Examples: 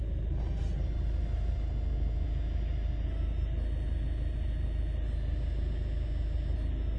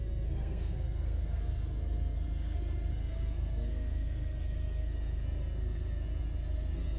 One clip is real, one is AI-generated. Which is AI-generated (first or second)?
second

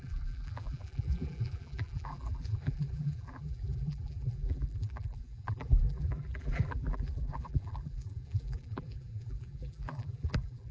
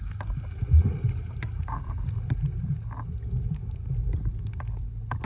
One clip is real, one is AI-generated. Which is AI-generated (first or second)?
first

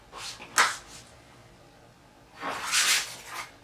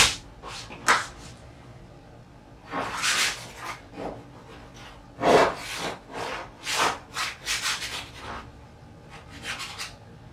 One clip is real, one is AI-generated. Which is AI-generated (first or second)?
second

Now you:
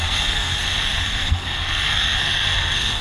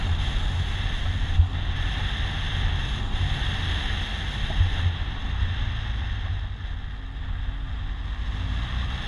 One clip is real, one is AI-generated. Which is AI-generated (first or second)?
first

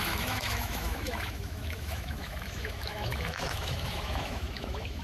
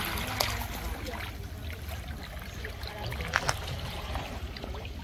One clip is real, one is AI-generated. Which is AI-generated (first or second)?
first